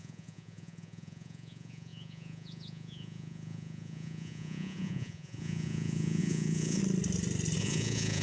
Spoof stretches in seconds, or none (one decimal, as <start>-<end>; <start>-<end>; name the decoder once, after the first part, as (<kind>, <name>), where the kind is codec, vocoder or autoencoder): 0.0-6.8 (vocoder, Vocos); 7.6-8.2